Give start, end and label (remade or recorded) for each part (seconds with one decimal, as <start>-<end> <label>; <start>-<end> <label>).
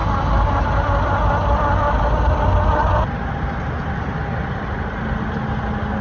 0.0-6.0 recorded